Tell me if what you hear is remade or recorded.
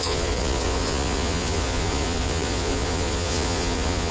remade